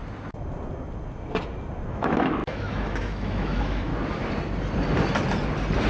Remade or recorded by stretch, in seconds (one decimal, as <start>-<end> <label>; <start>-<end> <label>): 0.0-1.9 recorded; 1.9-3.9 remade; 3.9-5.9 recorded